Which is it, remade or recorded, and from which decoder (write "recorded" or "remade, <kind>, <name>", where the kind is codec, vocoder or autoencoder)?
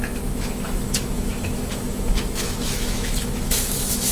remade, autoencoder, DAC-VAE